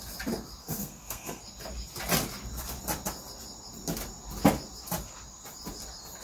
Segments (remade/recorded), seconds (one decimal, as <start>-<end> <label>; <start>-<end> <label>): 0.0-0.6 recorded; 0.6-1.4 remade; 1.4-6.2 recorded